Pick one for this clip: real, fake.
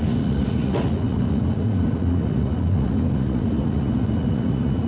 fake